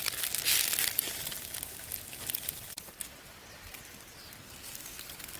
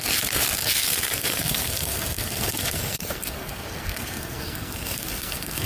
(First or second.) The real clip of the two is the first